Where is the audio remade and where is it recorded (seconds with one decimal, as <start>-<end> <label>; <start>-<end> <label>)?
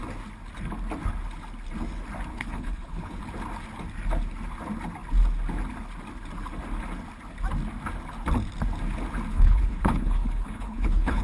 0.0-2.3 recorded; 2.3-3.2 remade; 3.2-9.3 recorded; 9.3-11.2 remade